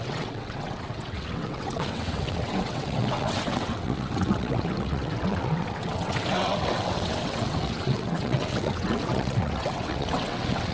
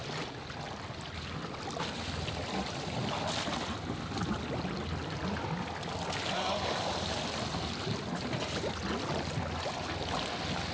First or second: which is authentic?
second